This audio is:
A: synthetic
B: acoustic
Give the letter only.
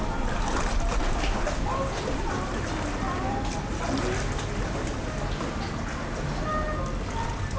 B